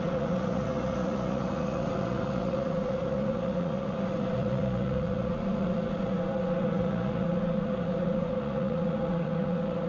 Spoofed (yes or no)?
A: yes